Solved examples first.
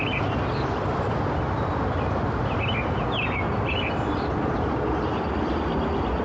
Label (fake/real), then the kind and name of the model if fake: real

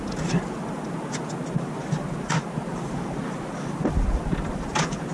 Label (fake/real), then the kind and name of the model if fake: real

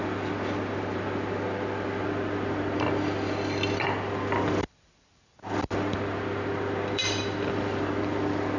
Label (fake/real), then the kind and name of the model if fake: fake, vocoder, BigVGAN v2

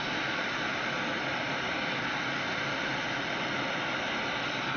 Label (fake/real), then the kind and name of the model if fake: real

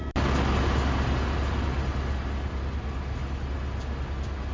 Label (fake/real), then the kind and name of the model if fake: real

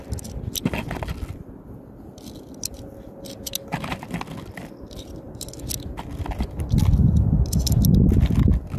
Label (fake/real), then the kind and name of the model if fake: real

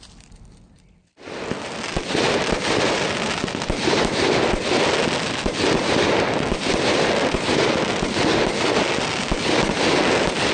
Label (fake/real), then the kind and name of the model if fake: real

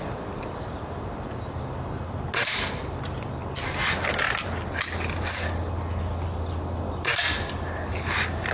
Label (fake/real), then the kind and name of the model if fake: real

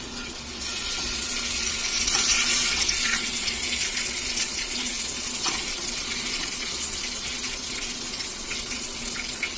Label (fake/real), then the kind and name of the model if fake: fake, vocoder, Vocos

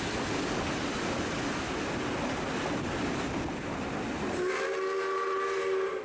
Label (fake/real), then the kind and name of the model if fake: real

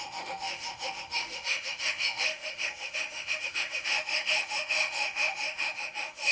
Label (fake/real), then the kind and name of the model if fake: fake, autoencoder, DAC-VAE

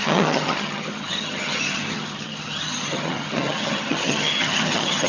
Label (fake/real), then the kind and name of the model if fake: fake, vocoder, HiFi-GAN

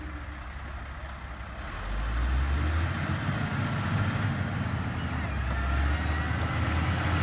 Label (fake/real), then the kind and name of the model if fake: real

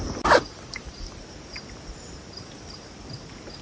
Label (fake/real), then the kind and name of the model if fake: real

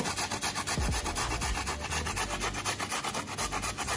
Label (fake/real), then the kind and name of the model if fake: real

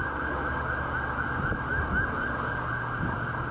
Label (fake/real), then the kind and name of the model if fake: real